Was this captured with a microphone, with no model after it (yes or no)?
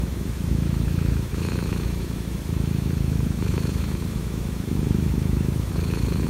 no